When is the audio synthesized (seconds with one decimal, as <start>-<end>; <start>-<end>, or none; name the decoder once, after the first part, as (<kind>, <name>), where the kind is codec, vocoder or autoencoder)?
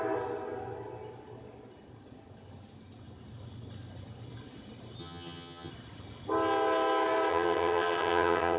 5.0-5.7 (vocoder, HiFi-GAN); 7.3-8.6